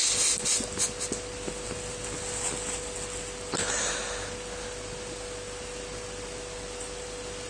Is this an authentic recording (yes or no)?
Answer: yes